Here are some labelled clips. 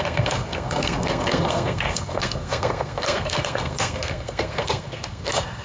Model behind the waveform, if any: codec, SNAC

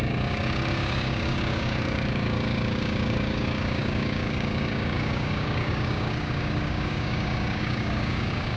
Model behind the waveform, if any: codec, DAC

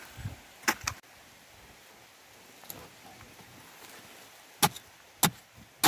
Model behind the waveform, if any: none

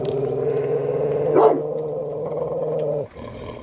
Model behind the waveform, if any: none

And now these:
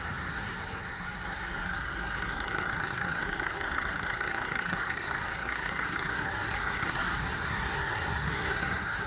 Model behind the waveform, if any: codec, SNAC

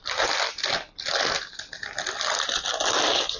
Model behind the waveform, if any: none